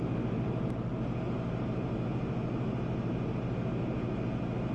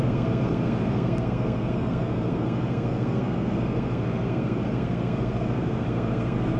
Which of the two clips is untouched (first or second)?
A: first